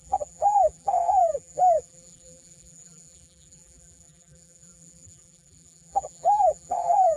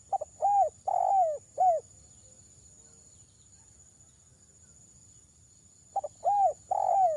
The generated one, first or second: first